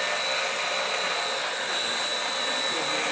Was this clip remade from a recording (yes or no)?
no